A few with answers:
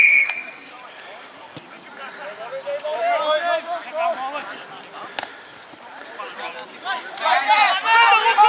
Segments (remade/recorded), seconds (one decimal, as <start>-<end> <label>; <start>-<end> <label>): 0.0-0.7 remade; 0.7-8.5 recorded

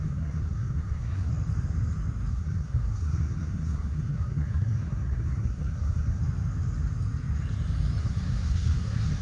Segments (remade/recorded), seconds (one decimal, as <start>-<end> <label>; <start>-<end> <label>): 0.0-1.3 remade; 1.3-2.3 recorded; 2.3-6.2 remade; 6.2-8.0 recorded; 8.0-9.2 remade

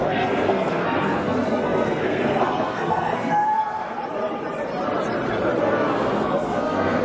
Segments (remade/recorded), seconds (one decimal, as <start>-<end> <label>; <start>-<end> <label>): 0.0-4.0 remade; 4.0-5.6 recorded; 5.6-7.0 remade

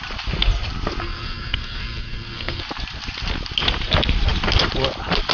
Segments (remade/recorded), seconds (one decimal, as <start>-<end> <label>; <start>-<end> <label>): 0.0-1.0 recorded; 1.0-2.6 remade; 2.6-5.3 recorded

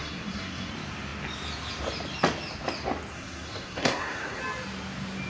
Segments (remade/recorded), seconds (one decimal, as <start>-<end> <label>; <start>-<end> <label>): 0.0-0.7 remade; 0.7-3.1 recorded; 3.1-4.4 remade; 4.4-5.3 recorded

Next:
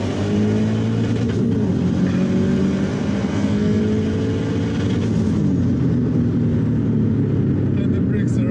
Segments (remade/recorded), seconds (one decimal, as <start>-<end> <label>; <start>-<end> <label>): 0.0-3.2 recorded; 3.2-3.8 remade; 3.8-8.5 recorded

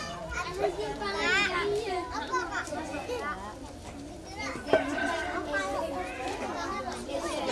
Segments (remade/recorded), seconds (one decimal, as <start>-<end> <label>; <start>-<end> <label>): 0.0-7.5 recorded

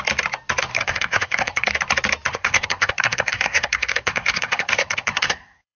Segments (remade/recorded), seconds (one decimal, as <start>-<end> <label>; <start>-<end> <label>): 0.0-0.7 recorded; 0.7-1.7 remade; 1.7-2.3 recorded; 2.3-5.8 remade